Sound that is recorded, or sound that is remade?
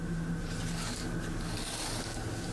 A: recorded